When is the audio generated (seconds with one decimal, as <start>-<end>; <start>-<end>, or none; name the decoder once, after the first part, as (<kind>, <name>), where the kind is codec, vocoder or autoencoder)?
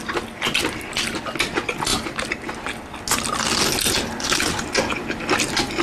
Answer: none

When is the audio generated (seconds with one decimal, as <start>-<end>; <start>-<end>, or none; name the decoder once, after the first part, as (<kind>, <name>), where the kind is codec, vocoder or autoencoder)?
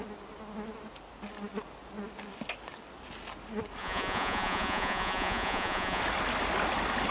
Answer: 3.8-6.0 (vocoder, Vocos)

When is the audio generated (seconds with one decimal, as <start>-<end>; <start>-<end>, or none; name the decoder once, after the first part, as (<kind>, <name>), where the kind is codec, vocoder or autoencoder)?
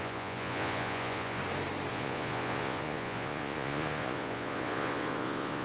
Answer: 0.0-1.4 (vocoder, Vocos); 1.9-5.6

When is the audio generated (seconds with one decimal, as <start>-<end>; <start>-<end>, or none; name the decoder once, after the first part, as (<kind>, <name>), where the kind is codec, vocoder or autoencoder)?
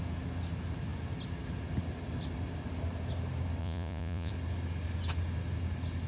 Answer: 3.6-4.3 (vocoder, Vocos)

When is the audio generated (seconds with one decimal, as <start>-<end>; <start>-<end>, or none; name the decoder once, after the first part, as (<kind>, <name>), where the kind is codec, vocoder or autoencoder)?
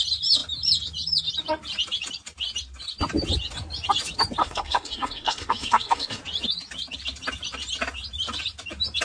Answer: 4.4-6.2 (codec, SNAC)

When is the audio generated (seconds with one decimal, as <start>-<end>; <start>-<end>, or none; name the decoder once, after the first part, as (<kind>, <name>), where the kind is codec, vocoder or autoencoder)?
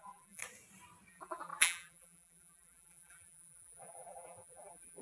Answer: 0.0-0.4 (vocoder, BigVGAN v2); 1.1-5.0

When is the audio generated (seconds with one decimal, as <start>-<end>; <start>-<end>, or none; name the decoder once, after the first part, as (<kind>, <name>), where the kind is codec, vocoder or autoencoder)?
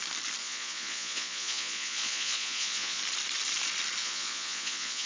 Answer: 0.4-3.0 (vocoder, Vocos); 4.0-5.1